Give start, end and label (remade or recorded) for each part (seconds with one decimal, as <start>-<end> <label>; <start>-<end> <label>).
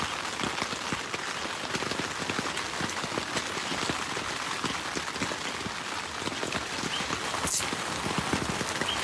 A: 0.0-9.0 recorded